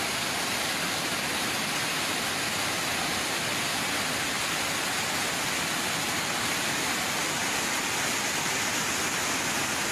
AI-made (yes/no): no